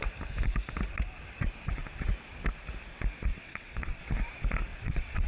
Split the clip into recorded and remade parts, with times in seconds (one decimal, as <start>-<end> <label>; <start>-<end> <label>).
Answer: 0.0-3.3 recorded; 3.3-4.0 remade; 4.0-4.7 recorded; 4.7-5.3 remade